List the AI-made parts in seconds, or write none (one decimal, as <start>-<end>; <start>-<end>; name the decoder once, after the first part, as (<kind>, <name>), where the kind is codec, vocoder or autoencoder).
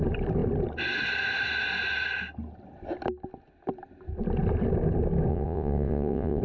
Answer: 5.3-6.4 (vocoder, WaveNeXt)